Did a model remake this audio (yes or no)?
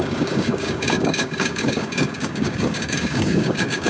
yes